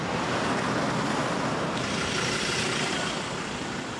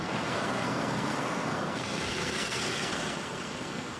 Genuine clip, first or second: first